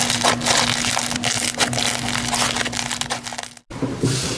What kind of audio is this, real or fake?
real